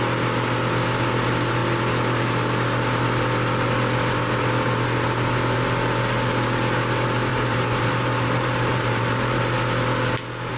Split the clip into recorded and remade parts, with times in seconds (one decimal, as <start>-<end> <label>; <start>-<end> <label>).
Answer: 0.0-7.3 recorded; 7.3-9.4 remade; 9.4-10.6 recorded